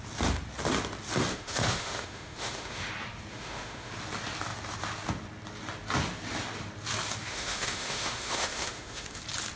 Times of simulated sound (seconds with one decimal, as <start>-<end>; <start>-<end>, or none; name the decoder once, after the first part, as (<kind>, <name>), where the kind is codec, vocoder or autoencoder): 1.3-2.9 (autoencoder, DAC-VAE); 3.3-3.9; 7.3-9.2